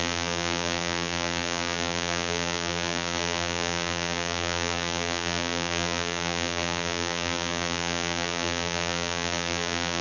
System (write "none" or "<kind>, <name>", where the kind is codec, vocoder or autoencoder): vocoder, BigVGAN v2